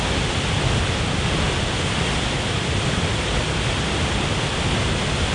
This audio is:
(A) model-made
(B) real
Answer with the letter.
B